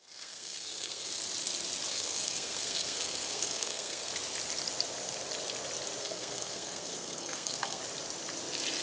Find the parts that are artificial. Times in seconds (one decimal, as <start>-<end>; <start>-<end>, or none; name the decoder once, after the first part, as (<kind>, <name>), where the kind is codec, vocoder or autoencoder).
0.0-1.2 (codec, SNAC); 1.9-4.1; 6.0-7.8

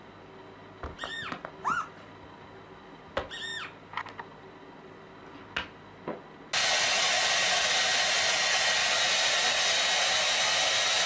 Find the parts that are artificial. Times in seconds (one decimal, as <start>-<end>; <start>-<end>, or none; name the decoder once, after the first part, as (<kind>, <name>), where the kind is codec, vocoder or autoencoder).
8.8-9.3 (vocoder, BigVGAN v2)

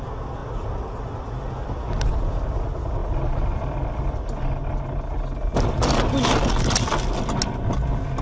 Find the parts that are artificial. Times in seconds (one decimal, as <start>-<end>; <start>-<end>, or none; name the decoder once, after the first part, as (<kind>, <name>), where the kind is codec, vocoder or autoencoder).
none

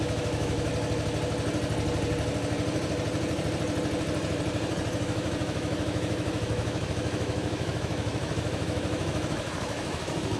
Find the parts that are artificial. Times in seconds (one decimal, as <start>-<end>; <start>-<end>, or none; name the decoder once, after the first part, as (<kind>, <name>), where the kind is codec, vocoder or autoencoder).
0.0-0.7 (autoencoder, DAC-VAE); 5.0-10.4

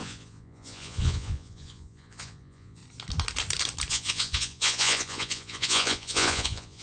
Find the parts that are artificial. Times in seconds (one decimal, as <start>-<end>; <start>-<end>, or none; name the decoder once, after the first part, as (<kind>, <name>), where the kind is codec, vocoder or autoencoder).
0.0-2.8 (vocoder, Vocos); 3.9-6.8

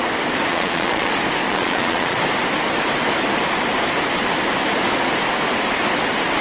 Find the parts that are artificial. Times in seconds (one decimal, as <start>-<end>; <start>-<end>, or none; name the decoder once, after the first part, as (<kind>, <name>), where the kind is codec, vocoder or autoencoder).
0.5-1.1 (vocoder, Vocos); 1.5-2.2